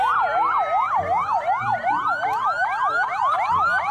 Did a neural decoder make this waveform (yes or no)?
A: no